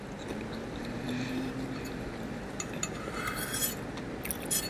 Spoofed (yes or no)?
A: no